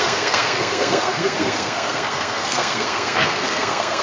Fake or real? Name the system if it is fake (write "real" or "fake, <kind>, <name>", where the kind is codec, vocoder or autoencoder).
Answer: fake, codec, SNAC